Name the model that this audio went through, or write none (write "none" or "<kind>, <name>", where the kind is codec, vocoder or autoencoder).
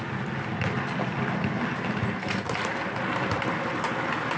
none